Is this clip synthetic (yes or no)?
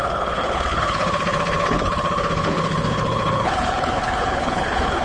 yes